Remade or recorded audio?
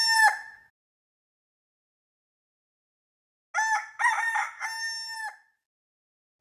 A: recorded